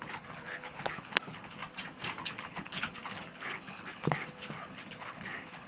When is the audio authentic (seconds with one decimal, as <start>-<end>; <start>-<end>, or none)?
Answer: 1.6-2.2